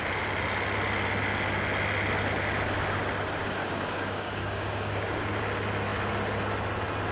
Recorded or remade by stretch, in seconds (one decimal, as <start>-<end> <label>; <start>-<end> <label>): 0.0-3.6 recorded; 3.6-5.4 remade; 5.4-7.1 recorded